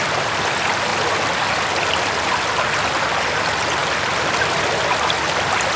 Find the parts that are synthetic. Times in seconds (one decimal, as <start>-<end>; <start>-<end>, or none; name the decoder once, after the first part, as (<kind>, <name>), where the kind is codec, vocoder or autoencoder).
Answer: none